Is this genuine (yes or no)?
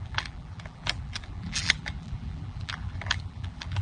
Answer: no